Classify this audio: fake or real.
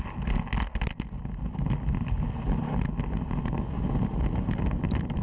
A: real